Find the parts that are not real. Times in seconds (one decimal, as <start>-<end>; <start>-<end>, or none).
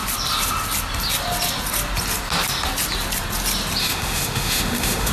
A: 3.8-5.1